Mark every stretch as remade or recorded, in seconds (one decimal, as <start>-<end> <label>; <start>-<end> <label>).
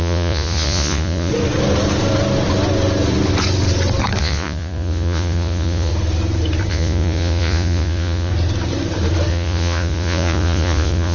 0.0-1.3 remade; 1.3-4.2 recorded; 4.2-5.9 remade; 5.9-6.7 recorded; 6.7-8.3 remade; 8.3-9.3 recorded; 9.3-11.1 remade